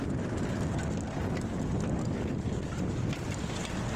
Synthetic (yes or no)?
no